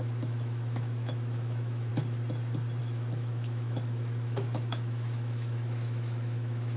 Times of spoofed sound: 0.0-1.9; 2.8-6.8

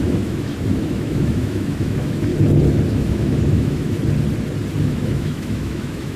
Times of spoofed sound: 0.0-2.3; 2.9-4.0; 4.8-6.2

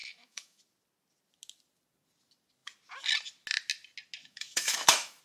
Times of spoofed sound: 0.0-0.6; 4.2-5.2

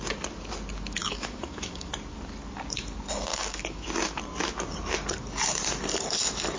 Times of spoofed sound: 1.0-1.9; 3.3-4.2

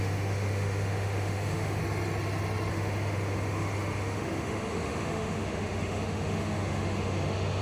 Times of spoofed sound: 0.0-1.8; 2.7-7.6

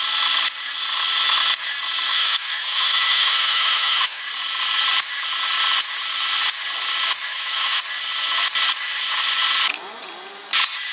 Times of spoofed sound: 2.1-4.2; 7.3-7.8

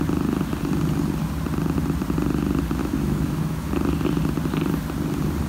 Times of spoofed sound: 2.8-3.7

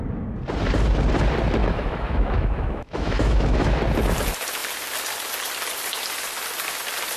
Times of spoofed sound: 1.6-3.8